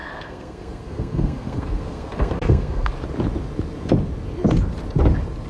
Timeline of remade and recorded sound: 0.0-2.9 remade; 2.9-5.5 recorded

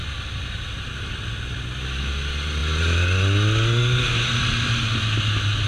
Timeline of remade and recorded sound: 0.0-5.7 recorded

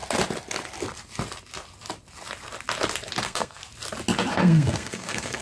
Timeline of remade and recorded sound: 0.0-3.2 recorded; 3.2-3.6 remade; 3.6-4.3 recorded; 4.3-5.4 remade